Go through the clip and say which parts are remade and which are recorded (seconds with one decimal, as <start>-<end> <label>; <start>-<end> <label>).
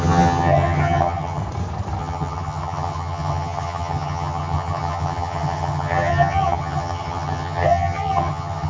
0.0-1.4 remade; 1.4-2.0 recorded; 2.0-8.7 remade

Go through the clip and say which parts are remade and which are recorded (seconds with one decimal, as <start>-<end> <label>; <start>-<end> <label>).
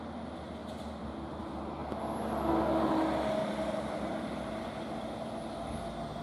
0.0-3.4 recorded; 3.4-4.6 remade; 4.6-6.2 recorded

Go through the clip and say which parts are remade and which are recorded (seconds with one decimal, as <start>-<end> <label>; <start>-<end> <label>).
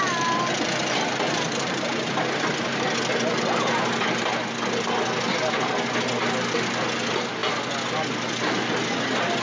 0.0-9.4 recorded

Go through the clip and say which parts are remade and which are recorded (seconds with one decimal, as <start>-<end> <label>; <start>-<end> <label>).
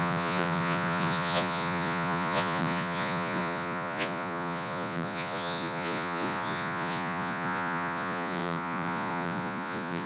0.0-10.1 remade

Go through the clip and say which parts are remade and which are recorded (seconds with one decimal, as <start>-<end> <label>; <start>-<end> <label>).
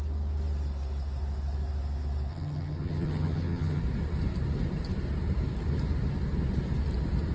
0.0-2.3 recorded; 2.3-3.8 remade; 3.8-7.3 recorded